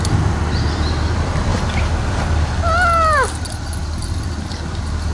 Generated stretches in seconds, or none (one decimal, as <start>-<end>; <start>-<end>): 1.5-2.5; 3.8-5.1

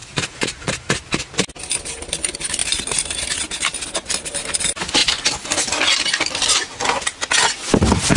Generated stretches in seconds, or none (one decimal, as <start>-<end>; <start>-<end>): 0.0-0.9; 2.6-3.3